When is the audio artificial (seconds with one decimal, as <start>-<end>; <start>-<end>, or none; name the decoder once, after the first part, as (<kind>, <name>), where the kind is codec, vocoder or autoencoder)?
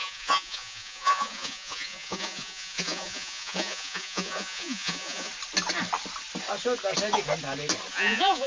0.0-5.3 (vocoder, Vocos); 7.9-8.5